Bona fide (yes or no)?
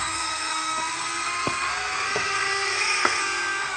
no